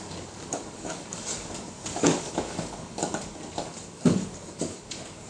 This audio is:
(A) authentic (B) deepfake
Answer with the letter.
B